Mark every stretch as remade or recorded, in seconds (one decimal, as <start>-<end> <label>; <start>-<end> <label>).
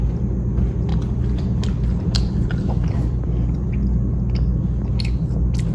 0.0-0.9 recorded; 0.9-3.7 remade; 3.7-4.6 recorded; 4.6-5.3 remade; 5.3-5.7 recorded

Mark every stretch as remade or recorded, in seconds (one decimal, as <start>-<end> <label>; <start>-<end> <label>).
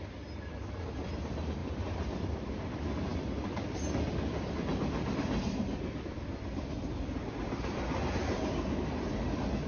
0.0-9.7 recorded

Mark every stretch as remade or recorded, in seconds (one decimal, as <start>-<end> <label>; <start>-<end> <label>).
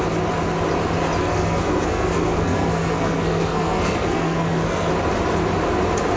0.0-1.2 recorded; 1.2-4.9 remade; 4.9-6.2 recorded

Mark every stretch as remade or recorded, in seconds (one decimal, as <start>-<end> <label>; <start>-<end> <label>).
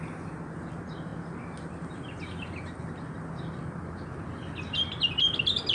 0.0-5.7 recorded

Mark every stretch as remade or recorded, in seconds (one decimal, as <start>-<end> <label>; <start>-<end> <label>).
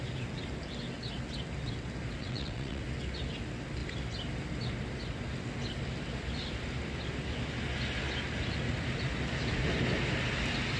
0.0-2.2 recorded; 2.2-2.8 remade; 2.8-10.8 recorded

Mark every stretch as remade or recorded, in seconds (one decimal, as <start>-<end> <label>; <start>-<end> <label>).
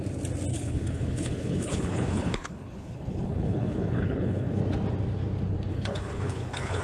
0.0-0.5 recorded; 0.5-4.6 remade; 4.6-5.7 recorded; 5.7-6.8 remade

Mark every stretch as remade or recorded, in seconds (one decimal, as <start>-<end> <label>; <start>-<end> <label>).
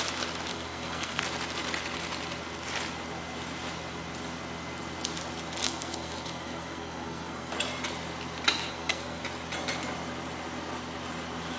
0.0-0.5 recorded; 0.5-1.2 remade; 1.2-5.6 recorded; 5.6-7.5 remade; 7.5-8.7 recorded; 8.7-9.2 remade; 9.2-11.6 recorded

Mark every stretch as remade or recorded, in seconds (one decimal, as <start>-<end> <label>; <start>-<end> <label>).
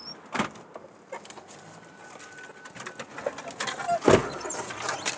0.0-5.2 recorded